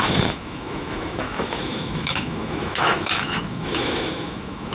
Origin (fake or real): fake